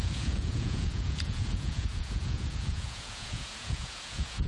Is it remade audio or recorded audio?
remade